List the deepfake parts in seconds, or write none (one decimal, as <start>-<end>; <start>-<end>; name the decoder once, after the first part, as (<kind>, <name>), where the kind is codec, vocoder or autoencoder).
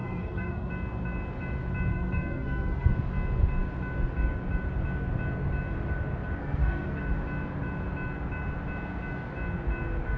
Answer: 0.0-0.7 (codec, SNAC); 1.9-2.9; 6.4-7.0